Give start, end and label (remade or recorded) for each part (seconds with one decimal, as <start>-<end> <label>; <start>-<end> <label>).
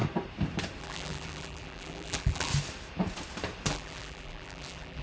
0.0-0.8 recorded; 0.8-2.5 remade; 2.5-3.7 recorded; 3.7-5.0 remade